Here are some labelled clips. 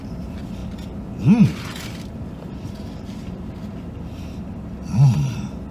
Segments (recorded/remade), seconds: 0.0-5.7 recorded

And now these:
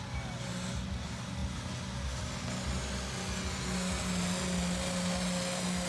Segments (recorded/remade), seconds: 0.0-5.9 recorded

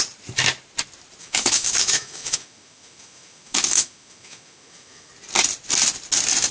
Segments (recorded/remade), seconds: 0.0-1.2 recorded; 1.2-5.1 remade; 5.1-6.5 recorded

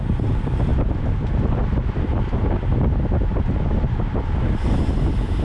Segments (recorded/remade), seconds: 0.0-5.4 recorded

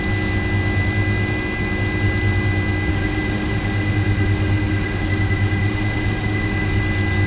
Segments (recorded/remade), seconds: 0.0-2.9 recorded; 2.9-6.8 remade; 6.8-7.3 recorded

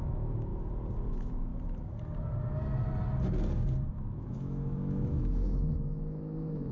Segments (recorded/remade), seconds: 0.0-0.5 remade; 0.5-1.1 recorded; 1.1-1.5 remade; 1.5-3.9 recorded; 3.9-6.7 remade